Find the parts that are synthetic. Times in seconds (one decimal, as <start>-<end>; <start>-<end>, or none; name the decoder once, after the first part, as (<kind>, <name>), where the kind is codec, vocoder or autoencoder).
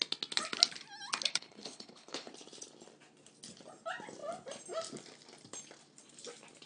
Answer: 1.3-2.3 (codec, HILCodec)